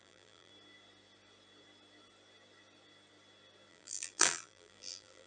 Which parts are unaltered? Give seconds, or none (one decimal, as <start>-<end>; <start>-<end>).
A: 0.5-3.7